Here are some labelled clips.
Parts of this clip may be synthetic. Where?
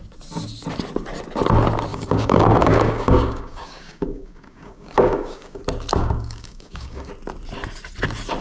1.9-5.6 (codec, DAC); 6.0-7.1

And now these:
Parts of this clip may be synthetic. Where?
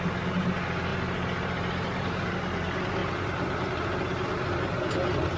0.9-2.3 (vocoder, BigVGAN v2)